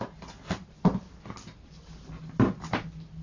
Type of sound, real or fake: real